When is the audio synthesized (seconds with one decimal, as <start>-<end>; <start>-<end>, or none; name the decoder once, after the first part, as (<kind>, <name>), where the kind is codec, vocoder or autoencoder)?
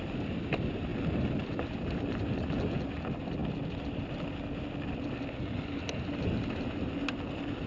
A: none